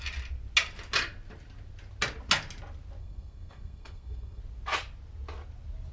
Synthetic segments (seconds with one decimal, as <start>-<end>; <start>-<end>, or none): 3.0-4.4